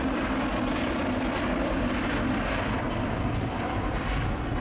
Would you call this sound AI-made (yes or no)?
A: no